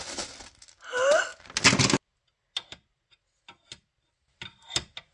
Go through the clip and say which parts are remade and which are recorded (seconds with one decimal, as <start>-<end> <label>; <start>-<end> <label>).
0.0-5.1 recorded